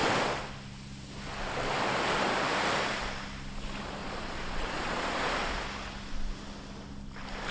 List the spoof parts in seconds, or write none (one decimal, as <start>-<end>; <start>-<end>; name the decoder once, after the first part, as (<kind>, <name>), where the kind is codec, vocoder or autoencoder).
4.0-5.3 (vocoder, Vocos)